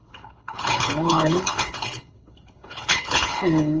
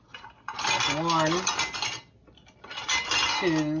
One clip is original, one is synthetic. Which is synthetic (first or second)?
first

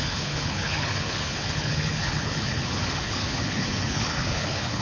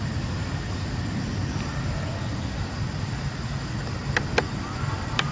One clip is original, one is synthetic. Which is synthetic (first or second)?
first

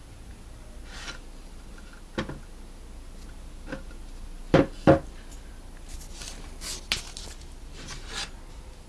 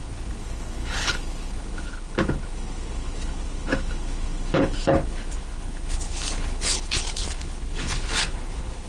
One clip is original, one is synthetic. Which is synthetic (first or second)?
second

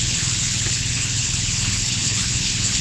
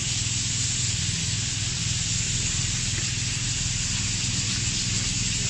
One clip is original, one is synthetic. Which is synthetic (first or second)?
first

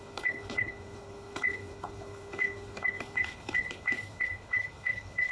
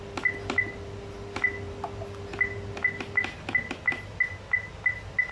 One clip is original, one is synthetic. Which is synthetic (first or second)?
first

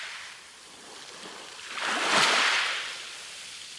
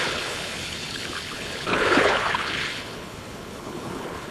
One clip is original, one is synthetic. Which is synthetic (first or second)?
second